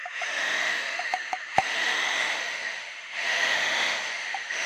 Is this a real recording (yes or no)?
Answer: no